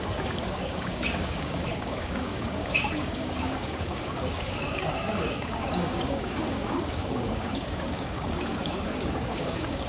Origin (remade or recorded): remade